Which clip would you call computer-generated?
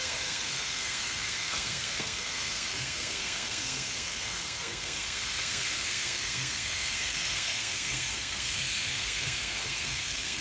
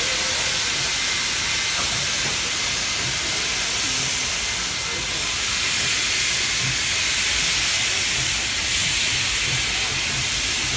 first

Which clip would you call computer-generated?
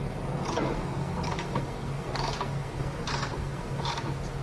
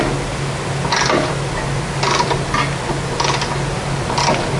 first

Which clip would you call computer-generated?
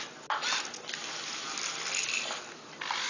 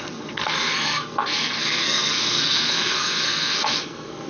second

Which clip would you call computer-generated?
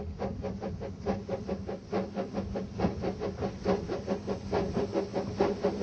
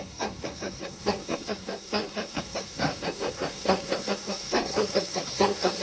second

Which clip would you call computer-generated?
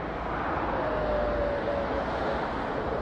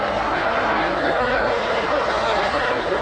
second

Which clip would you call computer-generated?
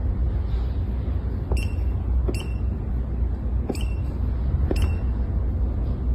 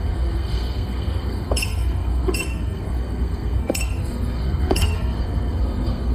second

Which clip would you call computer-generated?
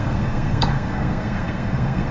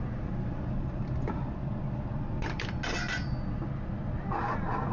first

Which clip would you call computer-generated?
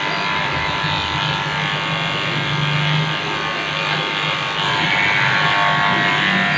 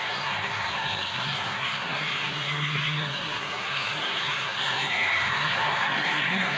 second